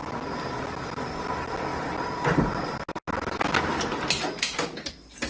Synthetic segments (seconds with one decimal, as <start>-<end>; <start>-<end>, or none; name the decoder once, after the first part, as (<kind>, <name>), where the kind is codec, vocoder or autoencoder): none